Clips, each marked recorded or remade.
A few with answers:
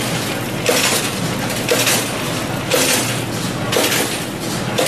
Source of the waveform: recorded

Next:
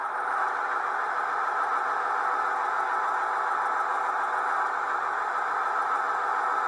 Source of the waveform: recorded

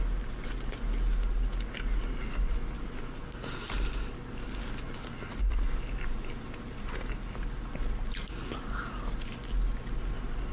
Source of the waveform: recorded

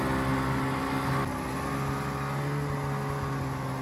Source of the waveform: recorded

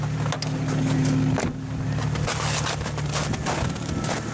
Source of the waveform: recorded